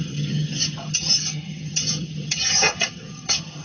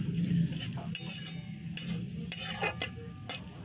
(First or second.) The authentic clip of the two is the second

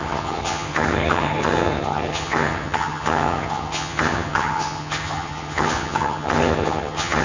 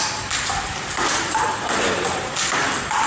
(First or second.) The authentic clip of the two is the second